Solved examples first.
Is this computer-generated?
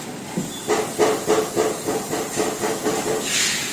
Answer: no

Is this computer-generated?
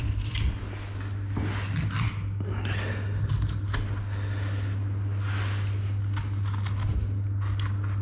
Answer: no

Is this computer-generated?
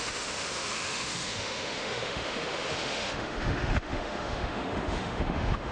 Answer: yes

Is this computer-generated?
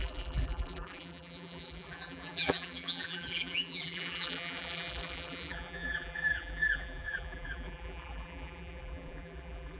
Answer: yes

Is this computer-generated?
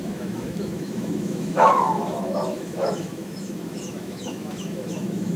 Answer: yes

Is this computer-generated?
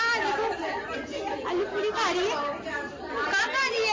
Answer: no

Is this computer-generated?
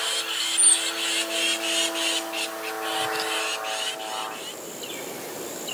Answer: no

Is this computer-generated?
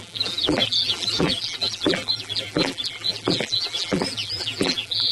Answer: yes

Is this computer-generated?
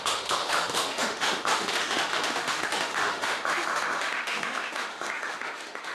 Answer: yes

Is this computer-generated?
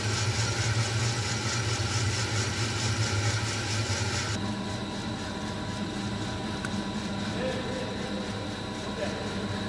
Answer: no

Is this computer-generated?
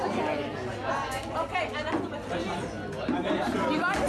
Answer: no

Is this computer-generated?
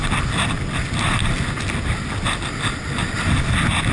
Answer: no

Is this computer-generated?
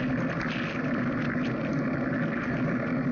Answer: no